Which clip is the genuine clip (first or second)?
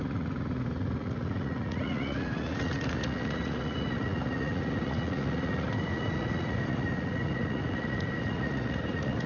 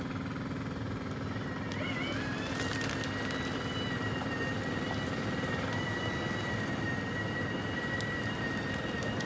second